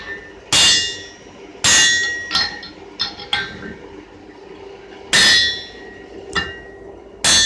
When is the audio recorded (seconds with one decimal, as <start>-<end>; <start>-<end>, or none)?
0.0-7.5